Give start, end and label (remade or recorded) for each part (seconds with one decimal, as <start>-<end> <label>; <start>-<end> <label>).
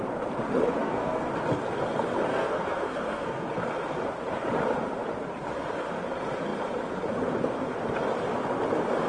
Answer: 0.0-0.8 recorded; 0.8-1.3 remade; 1.3-2.3 recorded; 2.3-3.5 remade; 3.5-9.1 recorded